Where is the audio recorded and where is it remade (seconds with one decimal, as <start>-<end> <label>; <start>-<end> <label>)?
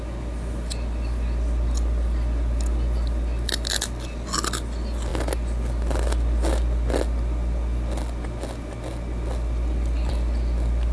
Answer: 0.0-10.9 recorded